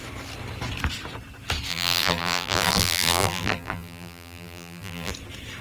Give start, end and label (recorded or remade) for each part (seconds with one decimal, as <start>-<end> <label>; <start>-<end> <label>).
0.0-1.7 recorded; 1.7-5.1 remade; 5.1-5.6 recorded